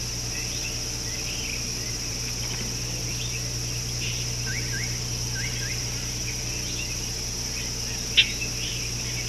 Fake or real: real